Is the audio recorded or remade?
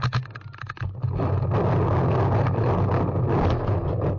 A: recorded